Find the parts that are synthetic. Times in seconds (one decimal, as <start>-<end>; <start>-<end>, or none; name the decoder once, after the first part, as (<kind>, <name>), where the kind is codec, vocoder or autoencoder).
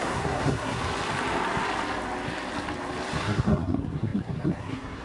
0.0-0.8 (codec, SNAC); 3.2-5.0